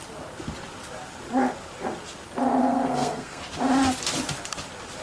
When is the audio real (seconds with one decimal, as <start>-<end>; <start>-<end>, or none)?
0.0-2.6; 3.4-5.0